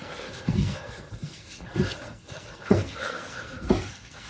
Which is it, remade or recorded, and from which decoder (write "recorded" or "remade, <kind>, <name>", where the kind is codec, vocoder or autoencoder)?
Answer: remade, codec, SNAC